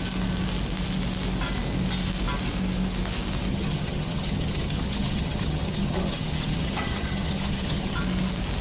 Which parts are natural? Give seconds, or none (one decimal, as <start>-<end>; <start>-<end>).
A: 0.0-3.5; 8.0-8.6